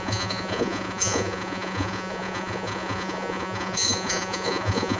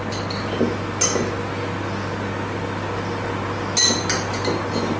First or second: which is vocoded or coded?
first